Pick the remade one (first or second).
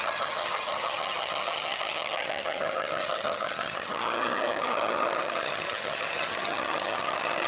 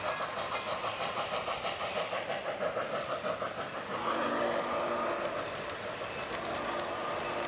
first